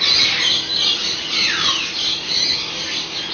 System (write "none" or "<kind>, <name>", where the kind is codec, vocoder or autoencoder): none